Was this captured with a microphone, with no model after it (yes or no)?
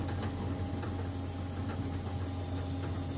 yes